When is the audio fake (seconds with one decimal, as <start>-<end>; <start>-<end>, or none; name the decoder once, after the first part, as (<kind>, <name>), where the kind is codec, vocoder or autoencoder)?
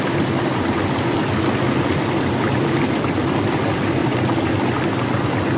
none